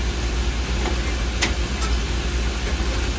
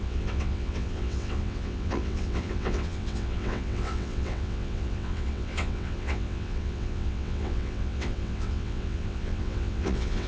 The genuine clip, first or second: first